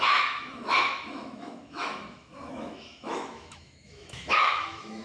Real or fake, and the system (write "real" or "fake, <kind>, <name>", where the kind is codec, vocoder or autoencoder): fake, autoencoder, DAC-VAE